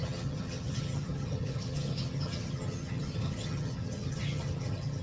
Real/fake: fake